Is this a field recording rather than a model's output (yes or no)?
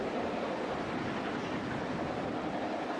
yes